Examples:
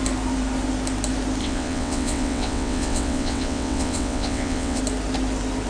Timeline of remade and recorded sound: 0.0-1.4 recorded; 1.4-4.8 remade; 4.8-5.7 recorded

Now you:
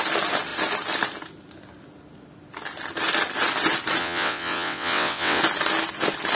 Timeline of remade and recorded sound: 0.0-4.0 recorded; 4.0-5.4 remade; 5.4-6.4 recorded

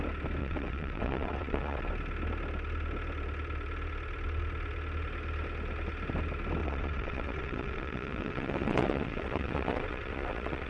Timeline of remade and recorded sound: 0.0-0.4 recorded; 0.4-1.9 remade; 1.9-6.6 recorded; 6.6-10.7 remade

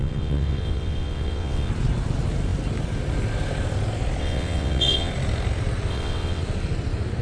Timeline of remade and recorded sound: 0.0-1.7 remade; 1.7-4.2 recorded; 4.2-5.1 remade; 5.1-5.9 recorded; 5.9-6.4 remade; 6.4-7.2 recorded

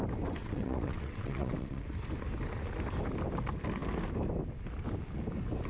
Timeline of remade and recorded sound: 0.0-0.4 recorded; 0.4-1.8 remade; 1.8-5.7 recorded

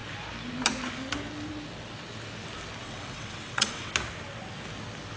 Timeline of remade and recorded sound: 0.0-2.8 recorded; 2.8-3.9 remade; 3.9-5.2 recorded

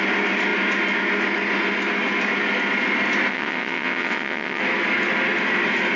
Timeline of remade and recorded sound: 0.0-3.3 recorded; 3.3-4.6 remade; 4.6-6.0 recorded

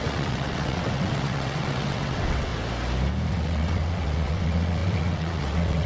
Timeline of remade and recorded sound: 0.0-2.5 remade; 2.5-3.3 recorded; 3.3-5.9 remade